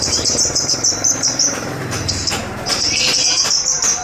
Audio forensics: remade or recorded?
remade